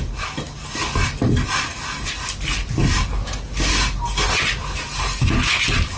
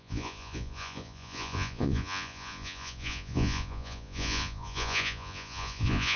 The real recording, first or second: first